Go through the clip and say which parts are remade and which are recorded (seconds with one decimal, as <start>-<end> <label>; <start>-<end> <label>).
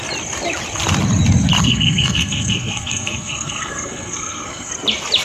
0.0-1.6 recorded; 1.6-4.7 remade; 4.7-5.2 recorded